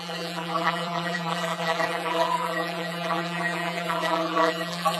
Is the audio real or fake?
fake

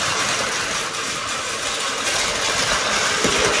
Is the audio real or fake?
real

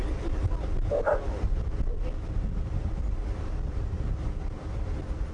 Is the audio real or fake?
fake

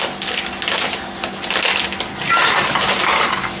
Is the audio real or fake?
real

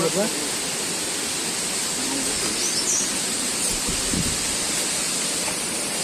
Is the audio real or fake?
real